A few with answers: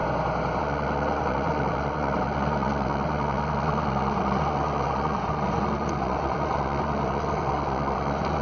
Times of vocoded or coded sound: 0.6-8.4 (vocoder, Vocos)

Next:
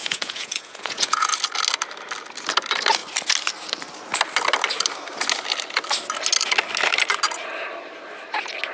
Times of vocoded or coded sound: 0.0-1.3 (vocoder, Vocos)

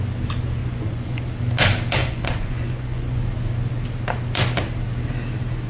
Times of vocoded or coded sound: 0.6-1.2 (vocoder, Vocos); 2.0-3.2

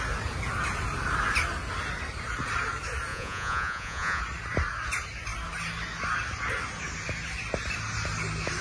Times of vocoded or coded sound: 3.1-4.2 (vocoder, Vocos)

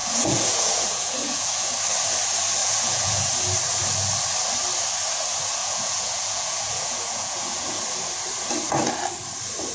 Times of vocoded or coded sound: 0.0-1.7 (vocoder, Vocos); 2.6-3.3; 5.6-7.8